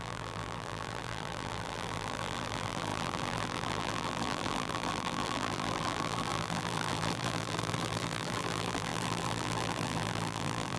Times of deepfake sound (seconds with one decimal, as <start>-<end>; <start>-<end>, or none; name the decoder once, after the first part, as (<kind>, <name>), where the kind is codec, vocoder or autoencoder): 0.0-10.8 (vocoder, BigVGAN v2)